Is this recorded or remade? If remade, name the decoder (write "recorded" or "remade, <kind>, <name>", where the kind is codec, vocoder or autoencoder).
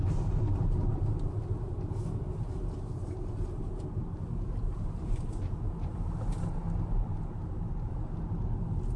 recorded